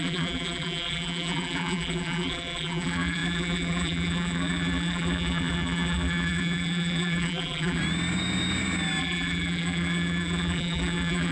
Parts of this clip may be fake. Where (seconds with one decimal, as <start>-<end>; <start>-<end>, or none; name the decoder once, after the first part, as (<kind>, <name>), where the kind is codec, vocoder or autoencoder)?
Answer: 0.0-7.8 (vocoder, BigVGAN v2); 9.0-11.3